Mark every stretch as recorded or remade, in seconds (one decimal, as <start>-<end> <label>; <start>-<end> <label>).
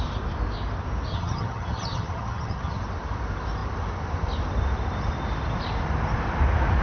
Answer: 0.0-1.1 recorded; 1.1-2.8 remade; 2.8-6.8 recorded